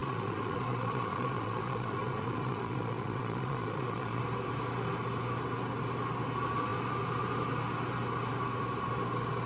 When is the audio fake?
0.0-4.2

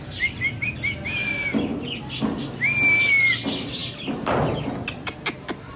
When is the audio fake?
none

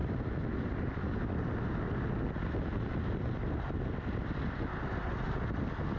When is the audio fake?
none

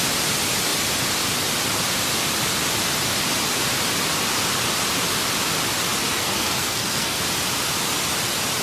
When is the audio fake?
6.1-7.2

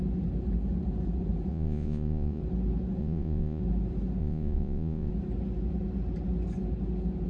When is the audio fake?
1.5-2.4; 3.0-3.6; 4.2-5.1

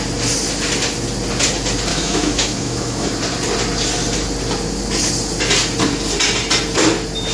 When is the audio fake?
1.9-3.1

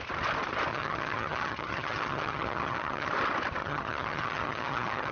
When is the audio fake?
0.7-3.1; 3.6-5.1